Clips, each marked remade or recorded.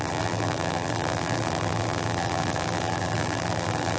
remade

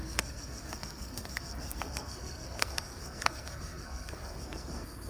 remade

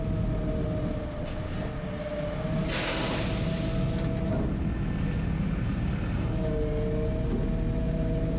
recorded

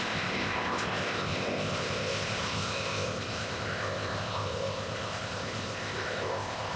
remade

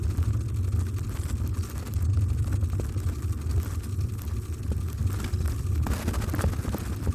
recorded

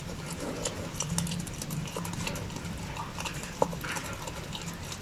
recorded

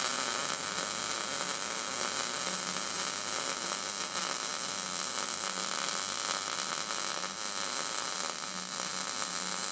recorded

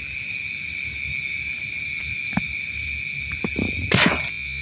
recorded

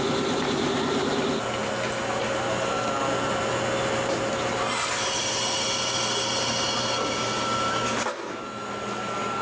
recorded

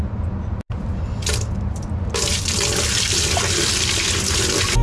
recorded